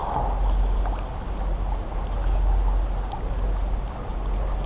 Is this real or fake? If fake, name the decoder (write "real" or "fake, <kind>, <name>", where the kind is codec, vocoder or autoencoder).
real